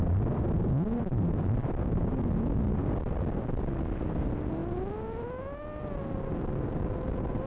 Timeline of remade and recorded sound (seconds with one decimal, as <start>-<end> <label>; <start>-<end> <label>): 0.0-7.5 recorded